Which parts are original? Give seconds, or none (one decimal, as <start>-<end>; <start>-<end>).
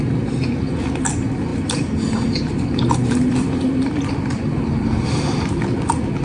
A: 0.0-1.5; 5.2-6.2